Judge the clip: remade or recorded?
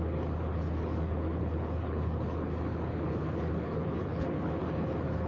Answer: remade